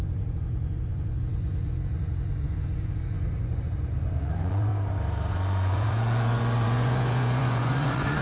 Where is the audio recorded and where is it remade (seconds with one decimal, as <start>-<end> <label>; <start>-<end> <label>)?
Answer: 0.0-4.7 remade; 4.7-5.3 recorded; 5.3-8.2 remade